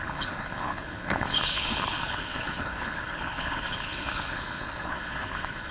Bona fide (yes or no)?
no